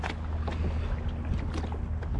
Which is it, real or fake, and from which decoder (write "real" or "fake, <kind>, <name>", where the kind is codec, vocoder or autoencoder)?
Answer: real